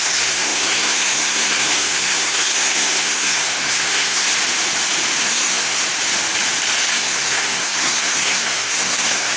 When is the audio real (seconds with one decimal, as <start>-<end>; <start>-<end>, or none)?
4.3-5.2; 5.8-6.9